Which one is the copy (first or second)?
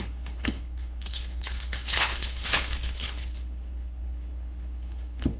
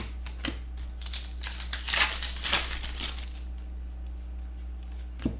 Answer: first